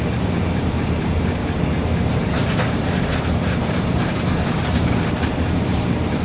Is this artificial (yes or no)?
yes